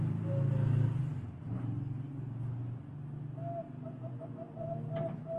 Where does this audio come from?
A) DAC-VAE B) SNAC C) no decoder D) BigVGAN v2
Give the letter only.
C